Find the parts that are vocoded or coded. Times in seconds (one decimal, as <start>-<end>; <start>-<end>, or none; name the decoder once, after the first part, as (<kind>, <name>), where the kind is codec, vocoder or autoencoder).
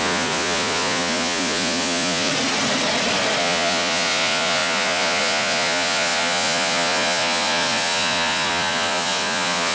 0.0-2.3 (vocoder, Vocos); 3.4-9.7